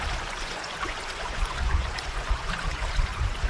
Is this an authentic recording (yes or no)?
no